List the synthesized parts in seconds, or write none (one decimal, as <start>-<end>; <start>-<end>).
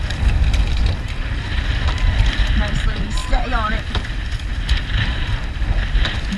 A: none